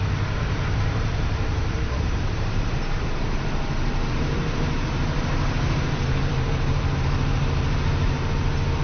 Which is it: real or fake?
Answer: fake